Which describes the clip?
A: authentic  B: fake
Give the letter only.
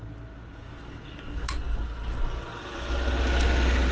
A